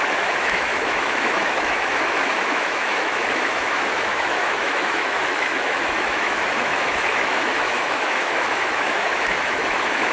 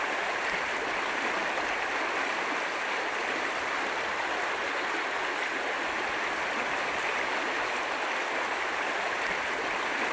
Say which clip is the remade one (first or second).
first